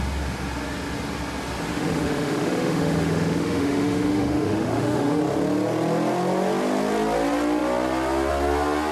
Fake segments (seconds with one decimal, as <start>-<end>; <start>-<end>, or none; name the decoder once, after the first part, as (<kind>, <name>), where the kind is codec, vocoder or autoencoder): 1.7-5.2 (autoencoder, DAC-VAE)